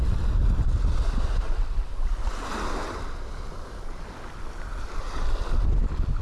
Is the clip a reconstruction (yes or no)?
no